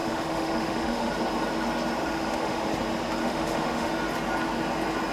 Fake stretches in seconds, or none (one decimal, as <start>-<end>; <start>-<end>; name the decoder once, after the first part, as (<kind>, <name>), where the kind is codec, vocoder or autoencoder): 0.0-1.1 (autoencoder, DAC-VAE); 2.0-2.7; 3.2-3.9